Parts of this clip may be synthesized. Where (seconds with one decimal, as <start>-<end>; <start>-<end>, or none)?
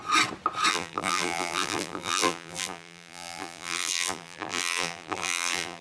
0.7-5.8